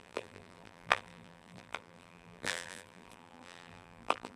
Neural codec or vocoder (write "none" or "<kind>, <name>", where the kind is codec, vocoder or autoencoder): vocoder, BigVGAN v2